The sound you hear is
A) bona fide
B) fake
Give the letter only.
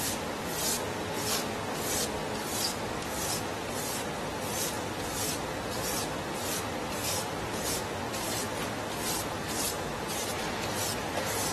A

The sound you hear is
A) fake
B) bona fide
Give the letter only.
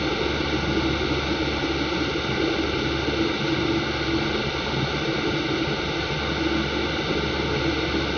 B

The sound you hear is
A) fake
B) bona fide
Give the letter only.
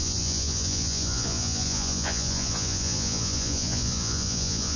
A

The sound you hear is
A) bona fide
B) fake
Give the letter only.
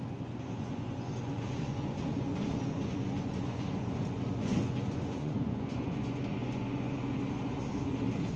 B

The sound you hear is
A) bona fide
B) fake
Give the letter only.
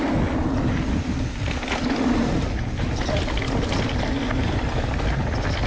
A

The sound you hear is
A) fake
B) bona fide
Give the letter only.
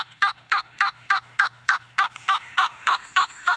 A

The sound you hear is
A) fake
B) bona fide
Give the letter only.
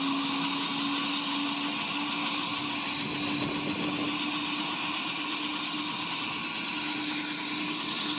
B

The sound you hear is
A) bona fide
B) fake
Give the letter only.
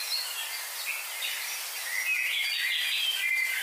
A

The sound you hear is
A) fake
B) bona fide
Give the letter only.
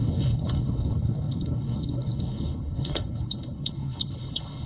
A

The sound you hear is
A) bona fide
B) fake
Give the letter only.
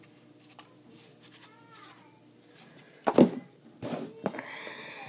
A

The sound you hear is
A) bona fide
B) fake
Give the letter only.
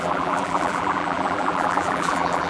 B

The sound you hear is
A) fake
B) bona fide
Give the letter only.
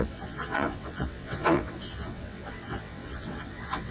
A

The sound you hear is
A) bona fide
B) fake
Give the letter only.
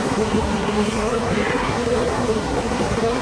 B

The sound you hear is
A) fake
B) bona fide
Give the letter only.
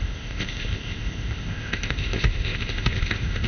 A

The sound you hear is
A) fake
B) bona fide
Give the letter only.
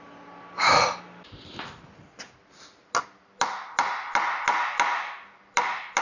B